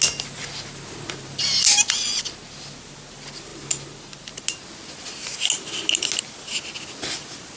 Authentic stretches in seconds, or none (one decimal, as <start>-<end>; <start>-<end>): 0.0-7.6